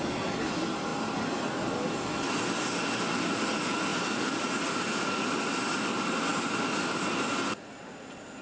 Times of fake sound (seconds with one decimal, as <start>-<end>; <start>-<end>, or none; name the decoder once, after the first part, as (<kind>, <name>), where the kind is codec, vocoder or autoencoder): none